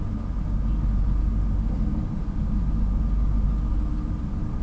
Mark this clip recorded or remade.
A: recorded